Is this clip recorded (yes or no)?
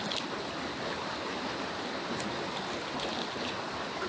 yes